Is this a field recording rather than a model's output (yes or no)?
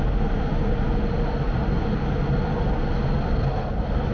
yes